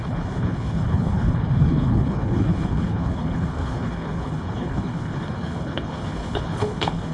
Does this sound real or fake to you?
fake